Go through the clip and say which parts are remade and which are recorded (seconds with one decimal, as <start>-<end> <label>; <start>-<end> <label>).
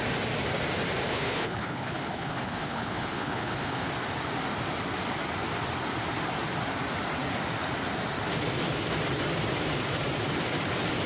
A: 0.0-1.1 recorded; 1.1-3.9 remade; 3.9-11.1 recorded